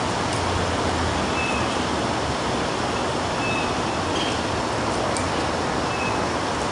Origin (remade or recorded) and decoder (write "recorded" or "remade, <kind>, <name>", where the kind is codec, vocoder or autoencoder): recorded